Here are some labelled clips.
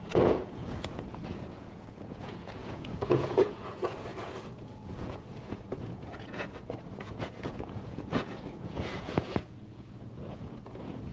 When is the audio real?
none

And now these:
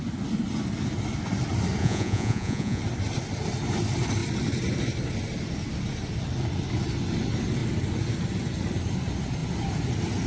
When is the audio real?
0.0-1.8; 2.8-10.3

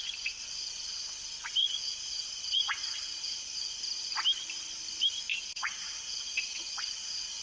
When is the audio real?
0.0-1.6; 3.8-5.3

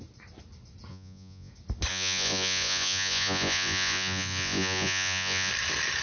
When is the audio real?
0.0-0.9; 1.5-1.9; 5.5-6.0